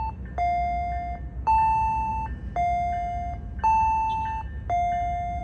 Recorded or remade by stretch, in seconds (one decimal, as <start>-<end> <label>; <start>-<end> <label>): 0.0-5.4 recorded